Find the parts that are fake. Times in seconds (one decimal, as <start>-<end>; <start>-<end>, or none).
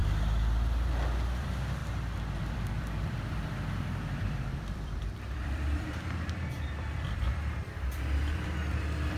1.4-1.8; 2.4-9.2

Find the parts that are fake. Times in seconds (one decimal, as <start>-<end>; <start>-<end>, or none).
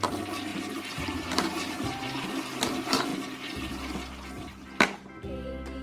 0.5-2.0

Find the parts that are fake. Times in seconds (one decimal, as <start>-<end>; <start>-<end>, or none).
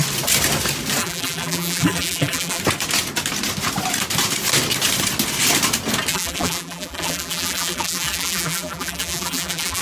1.0-2.6; 6.1-9.8